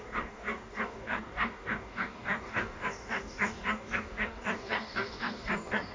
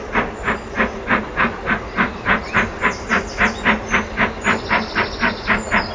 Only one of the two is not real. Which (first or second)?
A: first